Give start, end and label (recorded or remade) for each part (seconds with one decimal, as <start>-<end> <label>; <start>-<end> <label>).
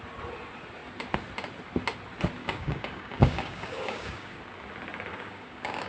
0.0-2.4 recorded; 2.4-4.4 remade; 4.4-5.1 recorded; 5.1-5.9 remade